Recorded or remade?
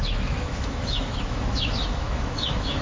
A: remade